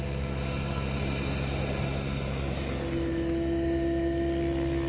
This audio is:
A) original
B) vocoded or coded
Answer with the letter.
A